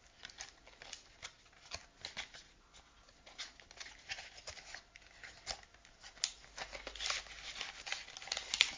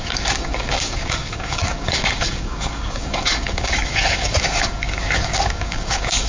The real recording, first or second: first